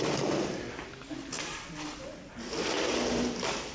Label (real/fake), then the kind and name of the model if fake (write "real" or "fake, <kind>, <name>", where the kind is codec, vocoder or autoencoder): real